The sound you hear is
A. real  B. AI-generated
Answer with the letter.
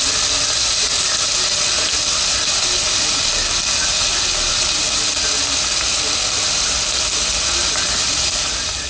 A